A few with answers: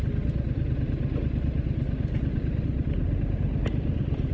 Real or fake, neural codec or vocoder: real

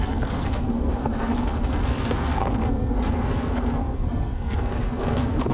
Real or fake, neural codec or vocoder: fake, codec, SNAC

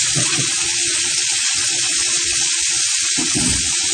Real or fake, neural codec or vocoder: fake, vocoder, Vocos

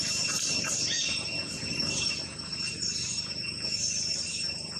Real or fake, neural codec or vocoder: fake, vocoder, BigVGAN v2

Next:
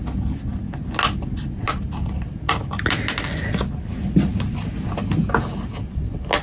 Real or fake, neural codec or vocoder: real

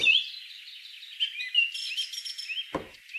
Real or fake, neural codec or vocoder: real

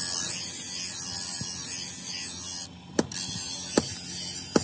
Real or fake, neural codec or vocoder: real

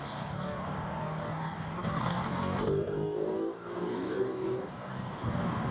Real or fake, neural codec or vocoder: fake, codec, DAC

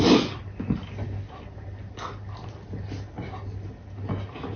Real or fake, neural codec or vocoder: real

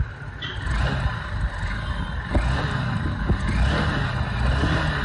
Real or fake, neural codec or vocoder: real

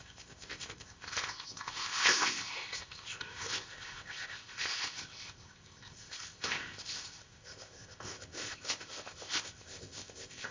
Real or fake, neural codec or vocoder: fake, codec, ZipCodec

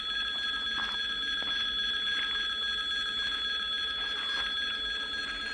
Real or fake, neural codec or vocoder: real